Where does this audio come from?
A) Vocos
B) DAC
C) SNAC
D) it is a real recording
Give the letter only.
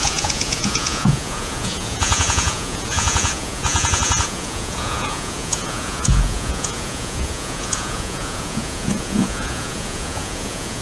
A